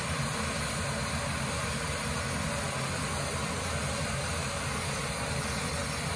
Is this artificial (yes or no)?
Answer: no